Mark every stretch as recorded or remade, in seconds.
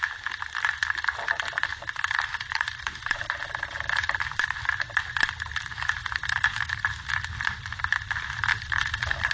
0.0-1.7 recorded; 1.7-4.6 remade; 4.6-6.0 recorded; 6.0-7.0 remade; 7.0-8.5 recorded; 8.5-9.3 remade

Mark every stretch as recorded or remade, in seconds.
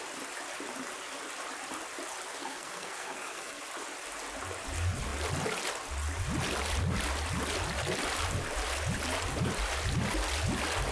0.0-2.4 recorded; 2.4-3.6 remade; 3.6-10.9 recorded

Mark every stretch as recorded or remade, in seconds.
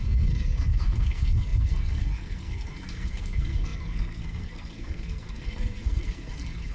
0.0-6.7 remade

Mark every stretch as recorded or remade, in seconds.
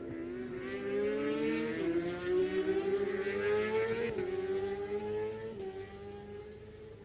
0.0-7.0 recorded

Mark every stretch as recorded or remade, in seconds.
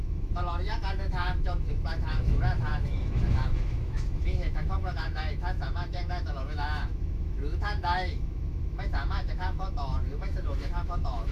0.0-11.3 remade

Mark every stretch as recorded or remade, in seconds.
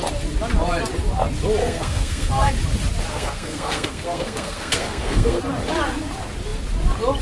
0.0-1.6 recorded; 1.6-2.5 remade; 2.5-3.1 recorded; 3.1-5.4 remade; 5.4-7.2 recorded